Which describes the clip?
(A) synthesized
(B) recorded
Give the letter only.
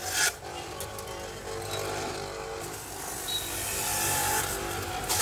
B